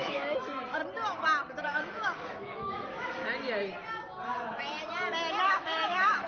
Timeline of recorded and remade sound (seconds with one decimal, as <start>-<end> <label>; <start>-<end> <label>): 0.0-0.8 remade; 0.8-1.6 recorded; 1.6-3.2 remade; 3.2-5.4 recorded; 5.4-6.3 remade